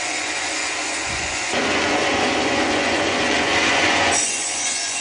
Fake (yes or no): yes